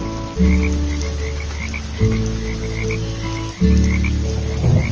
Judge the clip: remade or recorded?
recorded